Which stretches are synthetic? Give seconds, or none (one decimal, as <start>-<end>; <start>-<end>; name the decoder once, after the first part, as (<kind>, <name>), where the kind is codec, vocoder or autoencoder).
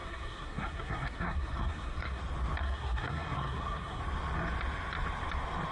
0.0-2.2 (codec, SNAC); 2.6-4.0